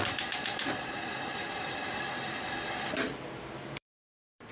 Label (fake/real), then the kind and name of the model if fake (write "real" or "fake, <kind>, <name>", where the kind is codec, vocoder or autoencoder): fake, vocoder, BigVGAN v2